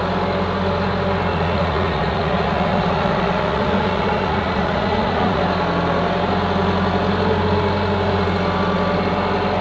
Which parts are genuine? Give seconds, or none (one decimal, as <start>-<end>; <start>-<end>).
0.0-1.3; 5.4-9.6

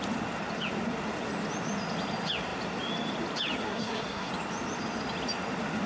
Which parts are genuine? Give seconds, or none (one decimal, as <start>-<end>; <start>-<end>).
0.0-3.6; 4.3-5.9

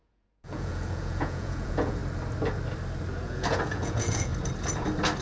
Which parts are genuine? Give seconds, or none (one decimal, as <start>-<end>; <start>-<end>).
2.0-3.2; 4.3-5.2

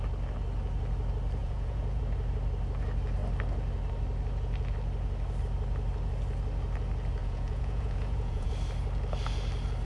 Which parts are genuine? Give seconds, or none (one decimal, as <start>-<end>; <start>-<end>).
0.0-1.4; 2.0-7.2; 8.5-9.8